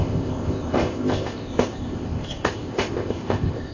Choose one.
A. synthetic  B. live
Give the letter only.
A